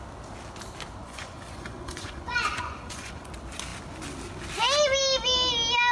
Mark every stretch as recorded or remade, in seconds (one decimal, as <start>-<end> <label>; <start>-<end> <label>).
0.0-1.0 recorded; 1.0-3.3 remade; 3.3-5.9 recorded

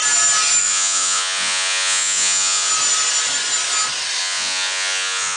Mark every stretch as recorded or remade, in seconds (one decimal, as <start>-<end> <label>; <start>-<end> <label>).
0.0-0.6 recorded; 0.6-2.7 remade; 2.7-4.2 recorded; 4.2-5.4 remade

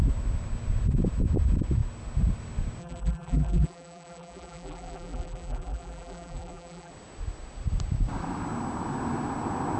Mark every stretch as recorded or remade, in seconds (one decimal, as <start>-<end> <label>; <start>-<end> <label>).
0.0-2.8 recorded; 2.8-6.9 remade; 6.9-9.8 recorded

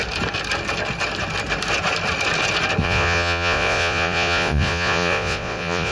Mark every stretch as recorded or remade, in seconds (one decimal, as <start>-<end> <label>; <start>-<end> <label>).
0.0-2.8 recorded; 2.8-5.9 remade

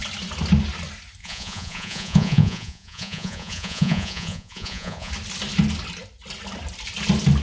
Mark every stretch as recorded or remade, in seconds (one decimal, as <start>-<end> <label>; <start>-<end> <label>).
0.0-1.2 recorded; 1.2-5.1 remade; 5.1-7.4 recorded

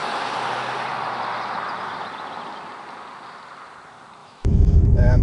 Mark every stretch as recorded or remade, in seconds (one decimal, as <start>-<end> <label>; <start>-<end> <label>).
0.0-4.2 recorded; 4.2-5.2 remade